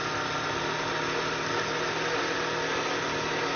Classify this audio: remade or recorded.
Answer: recorded